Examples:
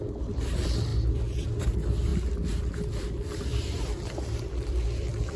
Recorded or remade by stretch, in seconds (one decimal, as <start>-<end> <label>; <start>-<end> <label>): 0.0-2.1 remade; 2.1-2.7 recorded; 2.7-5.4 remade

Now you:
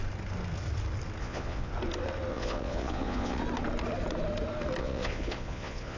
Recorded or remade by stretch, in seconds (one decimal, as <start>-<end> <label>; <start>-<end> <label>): 0.0-1.2 recorded; 1.2-1.7 remade; 1.7-2.3 recorded; 2.3-3.4 remade; 3.4-4.8 recorded; 4.8-6.0 remade

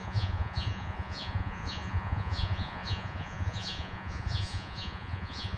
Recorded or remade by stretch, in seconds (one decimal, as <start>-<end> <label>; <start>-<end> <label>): 0.0-5.6 remade

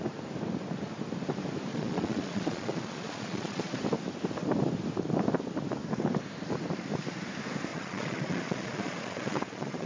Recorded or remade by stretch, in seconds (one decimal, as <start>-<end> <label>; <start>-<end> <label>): 0.0-1.7 recorded; 1.7-3.8 remade; 3.8-7.7 recorded; 7.7-9.9 remade

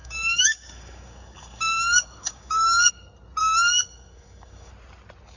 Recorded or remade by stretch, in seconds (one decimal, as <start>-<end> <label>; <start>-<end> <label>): 0.0-2.9 remade; 2.9-3.4 recorded; 3.4-4.7 remade; 4.7-5.4 recorded

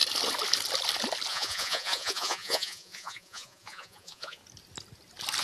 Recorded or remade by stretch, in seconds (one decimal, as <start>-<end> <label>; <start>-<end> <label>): 0.0-1.3 recorded; 1.3-4.4 remade; 4.4-5.4 recorded

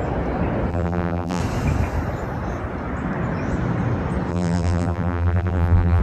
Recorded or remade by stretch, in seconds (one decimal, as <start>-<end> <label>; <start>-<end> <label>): 0.0-0.7 recorded; 0.7-1.4 remade; 1.4-4.3 recorded; 4.3-6.0 remade

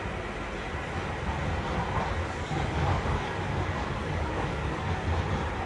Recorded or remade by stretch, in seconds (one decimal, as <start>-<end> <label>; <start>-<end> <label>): 0.0-2.2 recorded; 2.2-4.9 remade; 4.9-5.7 recorded